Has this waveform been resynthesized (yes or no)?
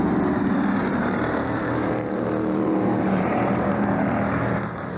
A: yes